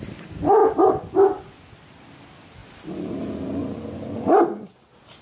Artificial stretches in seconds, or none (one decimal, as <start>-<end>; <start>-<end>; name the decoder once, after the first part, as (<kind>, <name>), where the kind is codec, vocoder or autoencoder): none